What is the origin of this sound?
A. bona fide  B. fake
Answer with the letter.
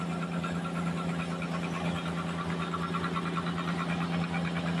A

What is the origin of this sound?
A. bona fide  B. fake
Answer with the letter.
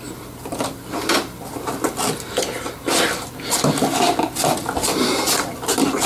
A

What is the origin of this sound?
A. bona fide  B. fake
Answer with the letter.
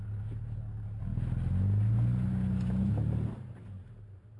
A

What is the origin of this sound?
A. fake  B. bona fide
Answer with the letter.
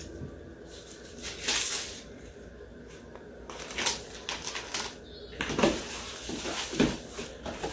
B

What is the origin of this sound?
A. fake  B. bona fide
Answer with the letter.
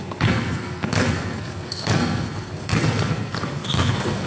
A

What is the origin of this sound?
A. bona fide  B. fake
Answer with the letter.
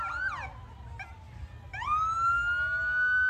A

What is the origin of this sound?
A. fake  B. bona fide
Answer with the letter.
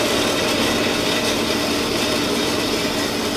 B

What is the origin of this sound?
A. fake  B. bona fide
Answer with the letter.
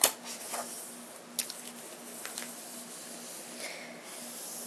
B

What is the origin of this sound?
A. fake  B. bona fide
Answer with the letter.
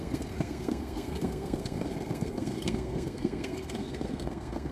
A